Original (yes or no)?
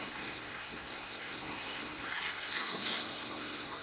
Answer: no